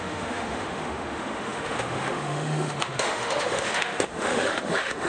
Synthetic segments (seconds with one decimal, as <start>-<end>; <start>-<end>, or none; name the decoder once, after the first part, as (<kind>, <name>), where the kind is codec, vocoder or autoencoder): 0.0-5.1 (autoencoder, DAC-VAE)